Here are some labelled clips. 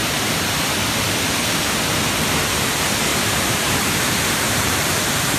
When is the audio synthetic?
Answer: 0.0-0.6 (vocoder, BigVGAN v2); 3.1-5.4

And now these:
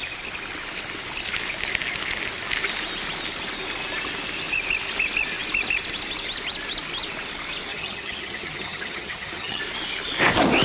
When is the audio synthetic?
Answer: 7.7-9.6 (vocoder, HiFi-GAN)